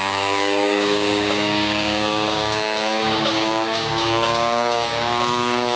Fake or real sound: fake